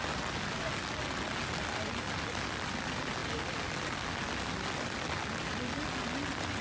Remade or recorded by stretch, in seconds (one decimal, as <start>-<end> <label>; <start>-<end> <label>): 0.0-6.6 recorded